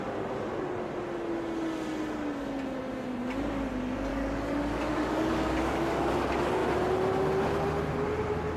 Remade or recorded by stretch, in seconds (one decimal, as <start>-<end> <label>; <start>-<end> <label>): 0.0-4.1 recorded; 4.1-6.1 remade; 6.1-8.6 recorded